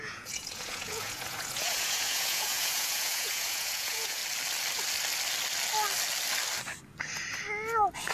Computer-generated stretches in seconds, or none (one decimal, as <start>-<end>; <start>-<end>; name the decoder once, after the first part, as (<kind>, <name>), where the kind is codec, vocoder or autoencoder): 0.0-4.2 (vocoder, Vocos)